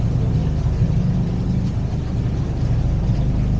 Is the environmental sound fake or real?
real